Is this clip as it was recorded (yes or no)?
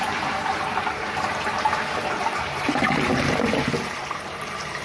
no